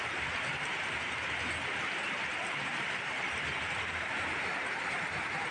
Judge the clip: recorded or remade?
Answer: recorded